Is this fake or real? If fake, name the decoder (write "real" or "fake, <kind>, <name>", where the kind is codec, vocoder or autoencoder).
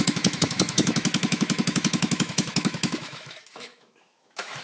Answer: fake, autoencoder, DAC-VAE